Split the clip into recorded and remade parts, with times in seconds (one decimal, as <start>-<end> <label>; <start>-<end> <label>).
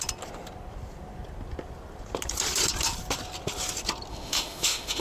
0.0-4.1 recorded; 4.1-5.0 remade